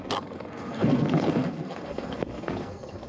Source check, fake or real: fake